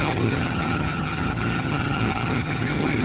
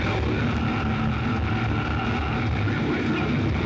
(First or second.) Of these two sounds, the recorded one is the second